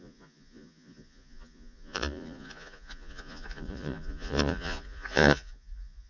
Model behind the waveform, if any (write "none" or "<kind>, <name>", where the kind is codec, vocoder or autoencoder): vocoder, Vocos